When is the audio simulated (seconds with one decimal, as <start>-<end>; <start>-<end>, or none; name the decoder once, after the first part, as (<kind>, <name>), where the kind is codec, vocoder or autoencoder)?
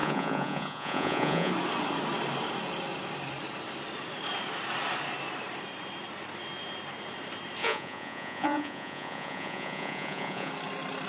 0.0-1.5 (vocoder, Vocos); 7.6-10.5